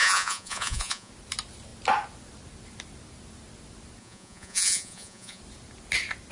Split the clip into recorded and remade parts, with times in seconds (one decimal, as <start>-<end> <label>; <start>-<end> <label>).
0.0-1.1 remade; 1.1-4.0 recorded; 4.0-5.4 remade; 5.4-6.3 recorded